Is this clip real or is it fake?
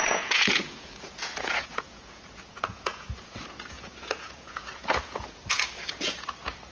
fake